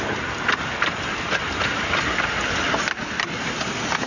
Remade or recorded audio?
remade